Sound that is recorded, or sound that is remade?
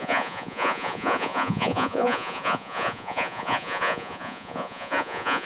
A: remade